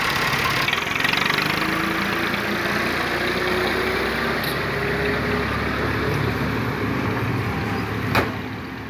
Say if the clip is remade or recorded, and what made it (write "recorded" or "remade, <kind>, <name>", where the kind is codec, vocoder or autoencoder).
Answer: recorded